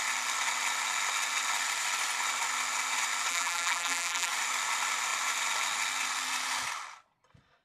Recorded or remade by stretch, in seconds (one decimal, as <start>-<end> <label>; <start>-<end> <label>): 0.0-3.3 recorded; 3.3-4.3 remade; 4.3-7.6 recorded